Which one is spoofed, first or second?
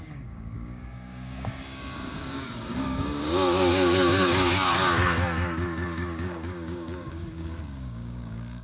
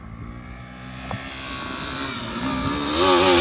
first